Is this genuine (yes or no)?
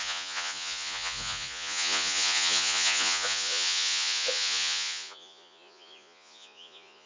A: no